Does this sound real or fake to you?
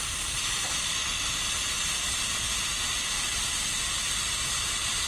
real